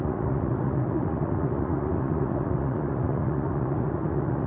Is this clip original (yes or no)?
no